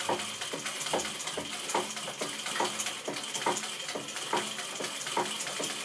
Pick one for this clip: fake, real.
real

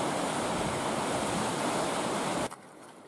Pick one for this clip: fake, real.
real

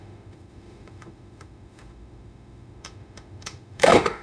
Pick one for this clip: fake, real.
fake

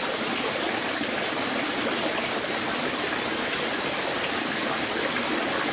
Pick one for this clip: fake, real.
real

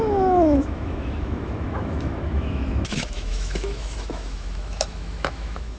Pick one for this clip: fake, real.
fake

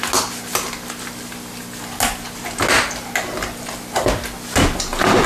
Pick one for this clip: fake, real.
real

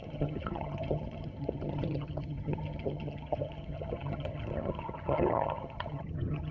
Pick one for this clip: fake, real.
fake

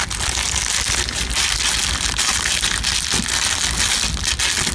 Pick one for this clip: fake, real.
real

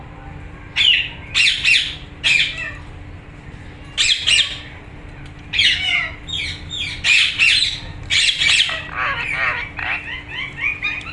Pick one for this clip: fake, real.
real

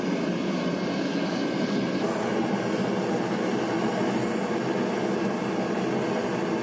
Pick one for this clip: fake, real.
real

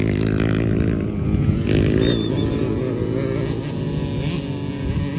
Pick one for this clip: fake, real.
real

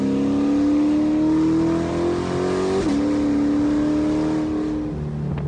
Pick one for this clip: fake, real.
real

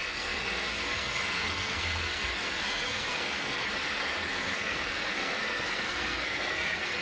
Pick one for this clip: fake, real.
fake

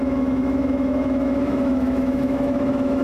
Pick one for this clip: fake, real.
fake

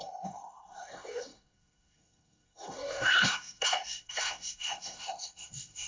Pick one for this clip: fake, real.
fake